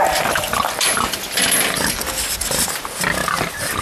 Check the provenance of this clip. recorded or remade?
recorded